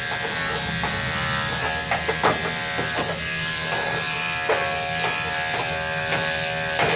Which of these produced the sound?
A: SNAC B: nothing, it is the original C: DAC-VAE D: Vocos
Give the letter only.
B